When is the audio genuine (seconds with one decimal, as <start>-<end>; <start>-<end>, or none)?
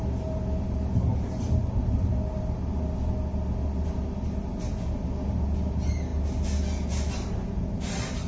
0.0-8.3